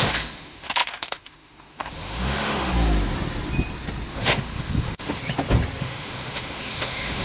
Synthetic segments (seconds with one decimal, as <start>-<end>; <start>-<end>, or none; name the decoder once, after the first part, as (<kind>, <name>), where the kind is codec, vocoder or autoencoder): 0.0-2.7 (autoencoder, DAC-VAE); 4.1-5.2; 5.8-7.2